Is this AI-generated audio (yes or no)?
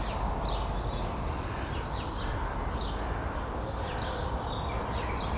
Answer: no